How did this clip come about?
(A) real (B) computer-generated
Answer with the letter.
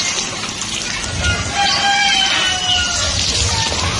A